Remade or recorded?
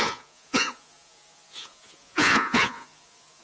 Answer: remade